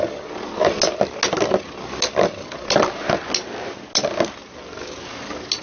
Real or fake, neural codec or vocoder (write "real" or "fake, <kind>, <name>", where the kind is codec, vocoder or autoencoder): real